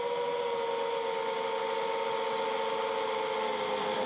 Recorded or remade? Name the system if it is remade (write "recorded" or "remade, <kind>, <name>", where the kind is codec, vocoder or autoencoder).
recorded